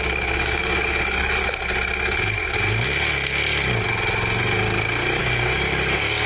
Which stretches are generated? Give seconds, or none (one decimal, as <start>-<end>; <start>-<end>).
0.0-1.4; 5.2-6.3